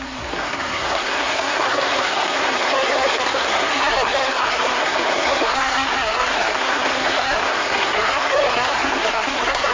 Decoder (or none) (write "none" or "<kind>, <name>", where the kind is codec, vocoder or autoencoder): codec, SNAC